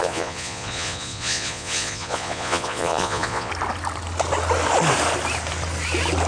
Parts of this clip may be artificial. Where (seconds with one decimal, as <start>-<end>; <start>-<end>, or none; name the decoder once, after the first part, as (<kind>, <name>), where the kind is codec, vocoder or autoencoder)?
0.0-3.5 (vocoder, Vocos)